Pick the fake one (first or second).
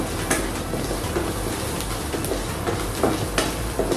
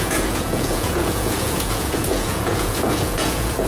second